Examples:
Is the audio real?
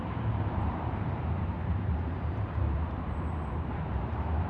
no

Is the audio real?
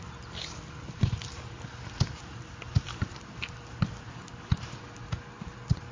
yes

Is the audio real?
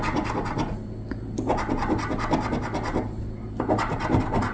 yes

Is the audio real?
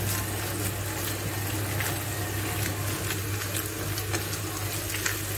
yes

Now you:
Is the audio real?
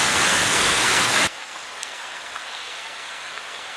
no